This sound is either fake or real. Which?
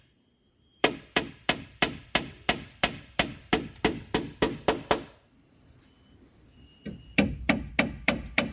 fake